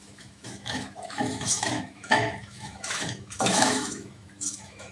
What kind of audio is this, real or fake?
fake